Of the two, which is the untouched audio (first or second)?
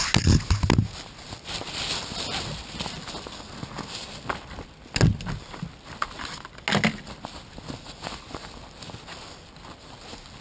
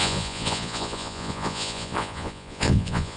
first